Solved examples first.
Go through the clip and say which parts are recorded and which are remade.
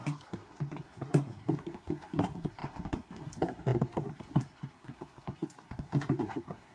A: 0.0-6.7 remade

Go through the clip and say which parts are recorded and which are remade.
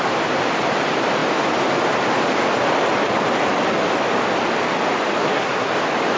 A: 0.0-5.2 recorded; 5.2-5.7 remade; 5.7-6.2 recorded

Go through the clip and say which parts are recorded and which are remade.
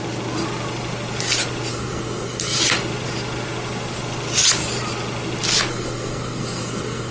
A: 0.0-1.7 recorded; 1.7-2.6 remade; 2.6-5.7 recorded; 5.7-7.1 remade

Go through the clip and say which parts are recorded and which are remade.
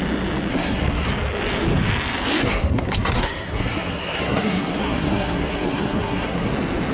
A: 0.0-0.5 recorded; 0.5-1.1 remade; 1.1-2.4 recorded; 2.4-6.5 remade; 6.5-6.9 recorded